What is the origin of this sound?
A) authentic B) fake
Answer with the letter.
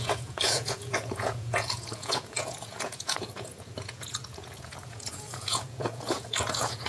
B